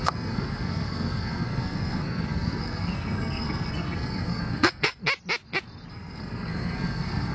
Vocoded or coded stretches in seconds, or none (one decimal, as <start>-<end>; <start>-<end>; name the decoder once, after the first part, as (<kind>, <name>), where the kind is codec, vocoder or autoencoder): 0.0-5.0 (codec, SNAC); 5.9-7.3